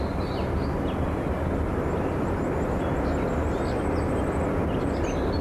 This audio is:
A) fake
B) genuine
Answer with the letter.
B